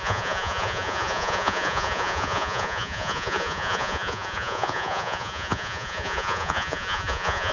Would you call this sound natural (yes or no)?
no